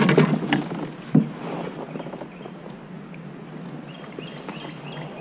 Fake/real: real